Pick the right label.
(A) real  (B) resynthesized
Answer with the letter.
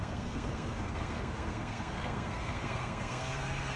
B